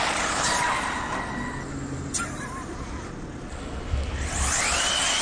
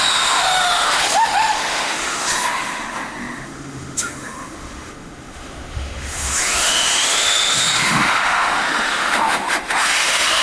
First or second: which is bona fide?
first